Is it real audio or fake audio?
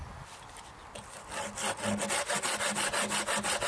real